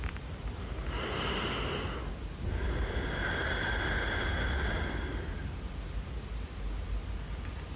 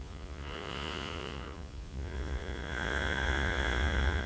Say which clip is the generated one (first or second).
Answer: second